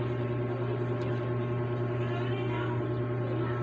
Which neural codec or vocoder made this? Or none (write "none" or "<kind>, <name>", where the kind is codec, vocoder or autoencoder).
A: none